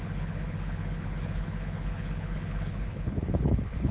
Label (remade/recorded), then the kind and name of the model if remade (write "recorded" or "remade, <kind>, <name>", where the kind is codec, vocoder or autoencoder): remade, codec, HILCodec